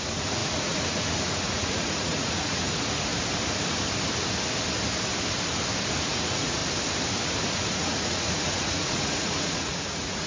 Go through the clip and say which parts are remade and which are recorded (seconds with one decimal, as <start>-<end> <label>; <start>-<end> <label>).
0.0-3.1 remade; 3.1-6.1 recorded; 6.1-6.6 remade; 6.6-7.5 recorded; 7.5-10.3 remade